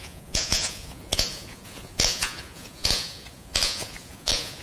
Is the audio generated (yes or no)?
yes